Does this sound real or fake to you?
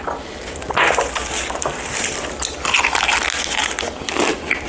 real